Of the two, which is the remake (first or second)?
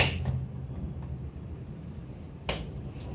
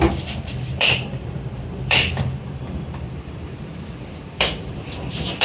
second